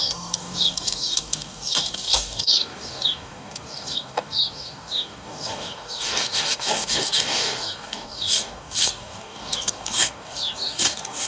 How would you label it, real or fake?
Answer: fake